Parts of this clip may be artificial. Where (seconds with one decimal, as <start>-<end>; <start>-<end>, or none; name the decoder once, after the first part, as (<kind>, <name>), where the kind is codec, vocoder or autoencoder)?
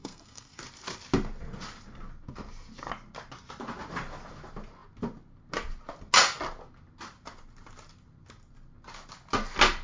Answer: 0.0-0.6 (codec, SNAC)